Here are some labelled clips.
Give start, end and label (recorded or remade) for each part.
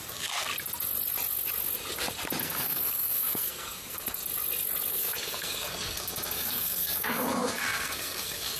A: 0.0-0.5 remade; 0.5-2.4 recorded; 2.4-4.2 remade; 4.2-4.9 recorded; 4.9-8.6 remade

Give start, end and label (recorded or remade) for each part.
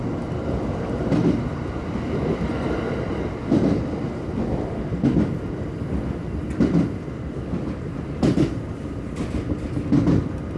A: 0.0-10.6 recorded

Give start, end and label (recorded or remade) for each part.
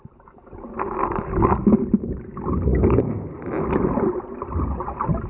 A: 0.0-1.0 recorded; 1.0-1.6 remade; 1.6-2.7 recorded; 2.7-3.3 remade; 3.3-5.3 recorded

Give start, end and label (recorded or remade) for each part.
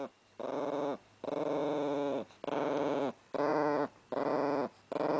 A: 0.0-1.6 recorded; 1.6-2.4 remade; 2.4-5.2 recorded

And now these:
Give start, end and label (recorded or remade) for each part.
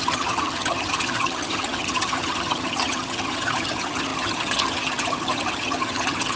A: 0.0-6.4 remade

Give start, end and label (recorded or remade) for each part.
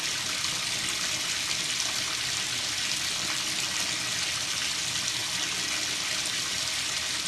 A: 0.0-7.3 recorded